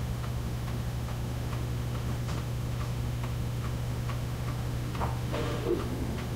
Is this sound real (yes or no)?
no